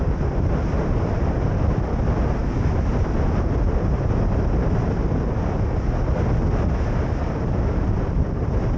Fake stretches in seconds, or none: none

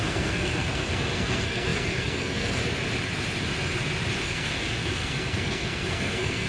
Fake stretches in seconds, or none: 0.0-2.6 (codec, SNAC); 4.2-6.5

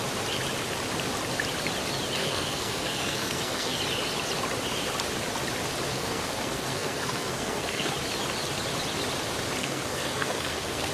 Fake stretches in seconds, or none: 2.2-3.8 (codec, SNAC); 5.9-7.9; 9.6-10.9

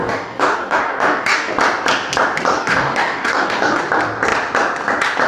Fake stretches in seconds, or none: 0.0-1.5 (codec, DAC); 2.5-3.8

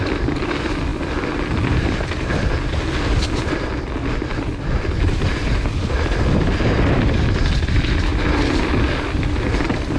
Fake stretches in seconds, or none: none

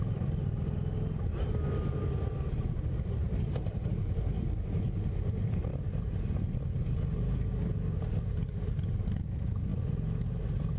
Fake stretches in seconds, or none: none